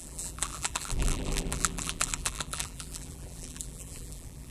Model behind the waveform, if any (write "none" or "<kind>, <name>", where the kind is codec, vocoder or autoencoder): vocoder, BigVGAN v2